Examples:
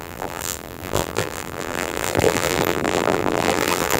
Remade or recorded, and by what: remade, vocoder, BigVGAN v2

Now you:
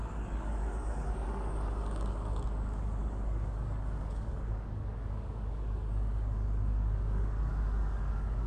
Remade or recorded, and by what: remade, codec, DAC